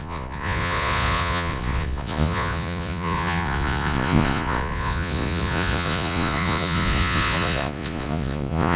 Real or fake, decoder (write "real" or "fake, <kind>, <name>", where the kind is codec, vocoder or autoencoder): fake, vocoder, Vocos